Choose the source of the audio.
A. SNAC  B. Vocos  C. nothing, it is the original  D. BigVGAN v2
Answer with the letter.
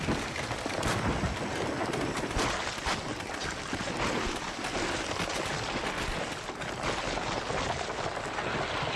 C